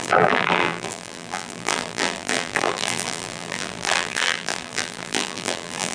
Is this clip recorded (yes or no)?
no